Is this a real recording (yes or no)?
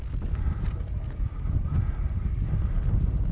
yes